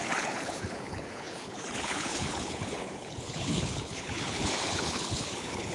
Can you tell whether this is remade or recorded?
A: remade